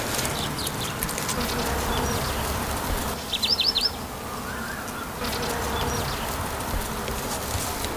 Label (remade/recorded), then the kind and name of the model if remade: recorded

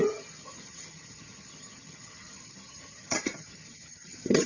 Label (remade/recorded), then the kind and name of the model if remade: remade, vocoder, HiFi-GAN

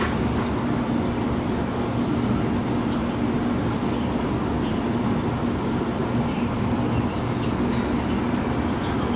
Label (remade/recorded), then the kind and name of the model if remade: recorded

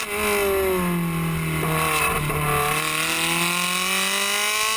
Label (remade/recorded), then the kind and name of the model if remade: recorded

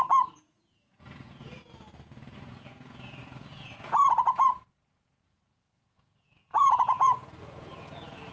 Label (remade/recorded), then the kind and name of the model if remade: remade, vocoder, Vocos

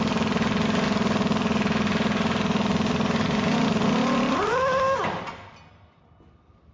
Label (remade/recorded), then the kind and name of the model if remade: recorded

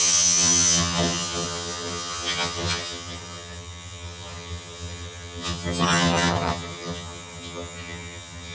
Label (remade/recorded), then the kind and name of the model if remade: remade, vocoder, HiFi-GAN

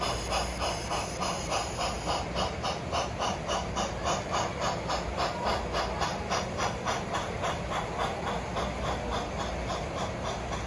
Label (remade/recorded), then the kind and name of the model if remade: recorded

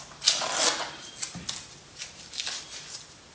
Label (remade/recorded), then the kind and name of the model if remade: recorded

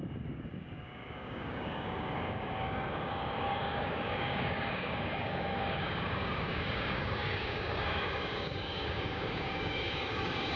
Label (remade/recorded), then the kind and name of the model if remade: remade, codec, DAC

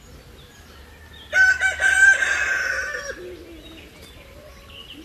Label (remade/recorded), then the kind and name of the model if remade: recorded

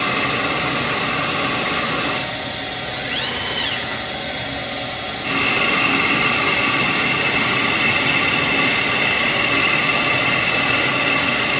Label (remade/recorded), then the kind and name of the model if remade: recorded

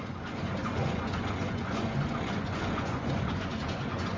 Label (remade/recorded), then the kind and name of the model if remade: remade, vocoder, Vocos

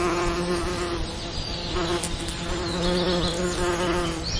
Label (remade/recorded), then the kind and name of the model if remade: recorded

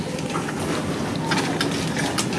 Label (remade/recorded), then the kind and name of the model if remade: recorded